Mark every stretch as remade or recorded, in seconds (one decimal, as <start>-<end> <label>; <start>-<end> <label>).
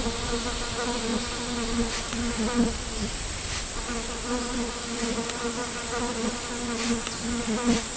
0.0-8.0 recorded